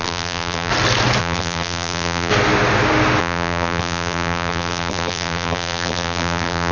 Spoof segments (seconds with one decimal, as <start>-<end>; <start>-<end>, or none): 0.0-0.7; 1.2-2.3; 3.2-6.7